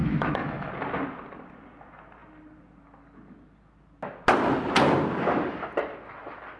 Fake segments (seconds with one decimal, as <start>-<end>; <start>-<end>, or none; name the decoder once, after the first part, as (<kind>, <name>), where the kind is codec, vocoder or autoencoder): 0.0-0.7 (autoencoder, DAC-VAE)